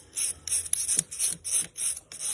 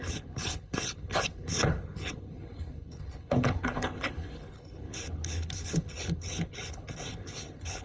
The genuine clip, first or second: first